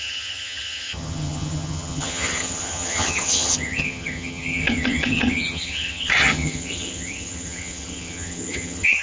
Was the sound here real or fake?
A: fake